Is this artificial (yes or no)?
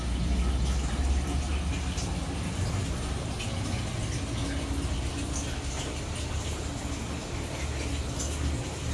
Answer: no